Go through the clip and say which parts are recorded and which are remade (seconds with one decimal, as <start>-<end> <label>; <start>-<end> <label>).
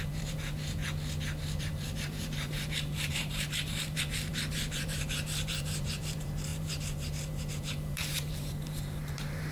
0.0-0.8 remade; 0.8-1.6 recorded; 1.6-9.5 remade